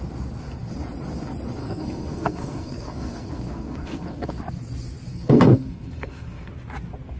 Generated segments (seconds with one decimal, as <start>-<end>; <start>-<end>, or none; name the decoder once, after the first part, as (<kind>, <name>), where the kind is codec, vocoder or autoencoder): 1.6-4.4 (codec, SNAC); 5.1-6.5